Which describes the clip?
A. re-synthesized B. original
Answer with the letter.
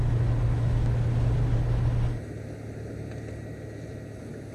B